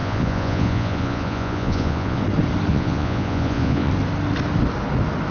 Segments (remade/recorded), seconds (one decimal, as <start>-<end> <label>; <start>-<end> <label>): 0.0-2.2 remade; 2.2-2.7 recorded; 2.7-3.9 remade; 3.9-5.3 recorded